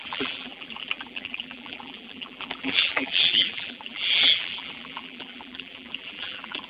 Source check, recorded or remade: remade